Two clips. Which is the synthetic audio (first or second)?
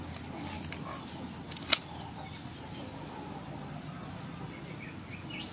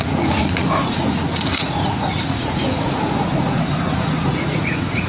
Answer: second